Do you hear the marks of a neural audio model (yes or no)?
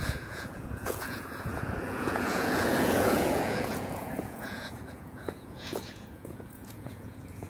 yes